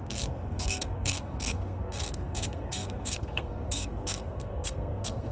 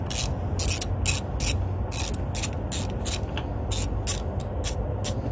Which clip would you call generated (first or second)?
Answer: first